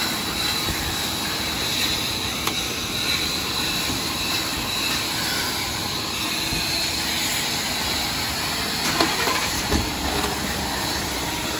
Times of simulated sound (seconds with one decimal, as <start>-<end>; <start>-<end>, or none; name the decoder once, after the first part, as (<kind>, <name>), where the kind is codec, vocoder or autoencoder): 0.0-4.5 (vocoder, BigVGAN v2); 9.1-11.6